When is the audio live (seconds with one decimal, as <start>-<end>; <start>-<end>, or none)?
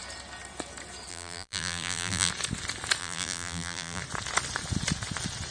0.0-1.1; 2.3-3.0; 4.0-5.5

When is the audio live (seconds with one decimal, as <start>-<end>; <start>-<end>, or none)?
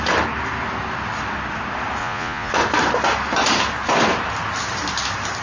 0.0-2.0; 2.5-5.4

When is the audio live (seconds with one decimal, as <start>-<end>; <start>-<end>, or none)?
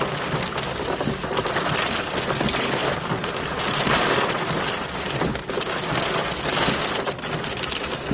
0.0-2.8; 4.2-8.1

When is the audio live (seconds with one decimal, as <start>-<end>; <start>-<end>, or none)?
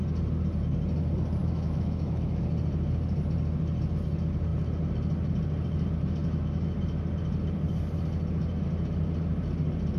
0.0-1.4; 2.4-6.2; 6.8-10.0